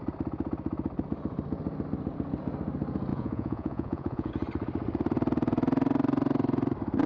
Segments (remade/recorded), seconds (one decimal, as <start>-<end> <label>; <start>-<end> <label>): 0.0-3.1 recorded; 3.1-4.3 remade; 4.3-7.1 recorded